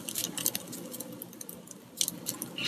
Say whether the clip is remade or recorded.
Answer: recorded